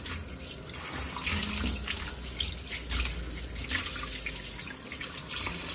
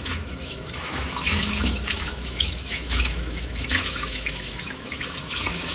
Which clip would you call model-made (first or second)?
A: second